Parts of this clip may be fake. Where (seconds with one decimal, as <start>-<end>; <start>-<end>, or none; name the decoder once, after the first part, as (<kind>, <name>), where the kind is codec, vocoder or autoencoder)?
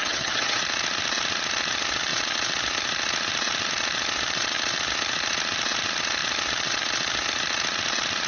0.0-0.6 (vocoder, HiFi-GAN)